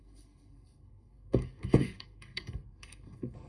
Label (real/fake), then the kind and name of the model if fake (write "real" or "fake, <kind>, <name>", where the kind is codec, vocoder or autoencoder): fake, codec, SNAC